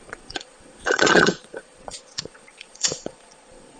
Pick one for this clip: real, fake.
fake